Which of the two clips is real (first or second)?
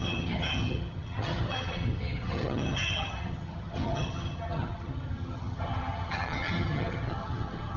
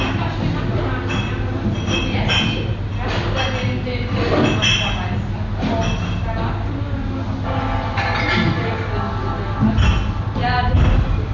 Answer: second